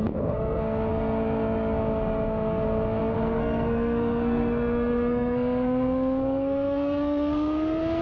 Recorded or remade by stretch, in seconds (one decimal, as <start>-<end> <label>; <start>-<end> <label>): 0.0-8.0 remade